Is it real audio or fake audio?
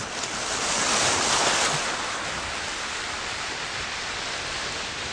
real